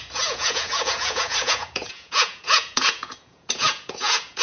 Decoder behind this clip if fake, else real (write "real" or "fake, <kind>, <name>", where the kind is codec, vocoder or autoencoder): fake, vocoder, Vocos